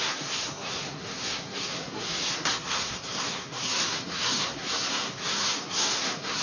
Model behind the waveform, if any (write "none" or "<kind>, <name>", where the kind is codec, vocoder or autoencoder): codec, SNAC